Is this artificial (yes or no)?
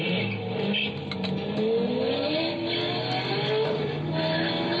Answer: no